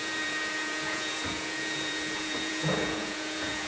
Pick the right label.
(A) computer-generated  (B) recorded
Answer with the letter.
A